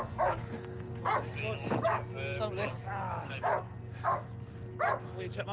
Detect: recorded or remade recorded